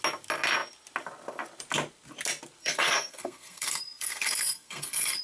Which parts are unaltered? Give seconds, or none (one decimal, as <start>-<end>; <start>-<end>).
0.0-2.6